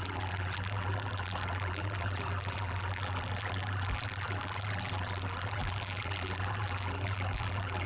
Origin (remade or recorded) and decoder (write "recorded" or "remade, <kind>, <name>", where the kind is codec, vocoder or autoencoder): remade, vocoder, BigVGAN v2